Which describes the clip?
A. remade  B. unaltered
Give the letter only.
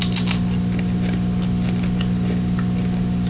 B